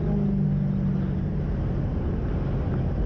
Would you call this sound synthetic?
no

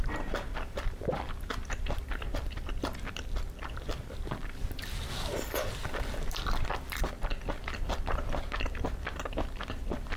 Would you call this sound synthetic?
yes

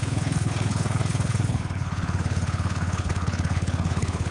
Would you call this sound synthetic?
yes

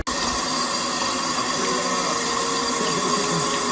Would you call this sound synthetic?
no